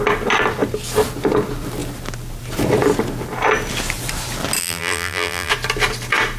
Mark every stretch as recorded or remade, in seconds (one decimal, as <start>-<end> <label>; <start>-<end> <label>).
0.0-4.6 recorded; 4.6-5.5 remade; 5.5-6.4 recorded